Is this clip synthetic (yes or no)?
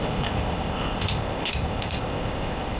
yes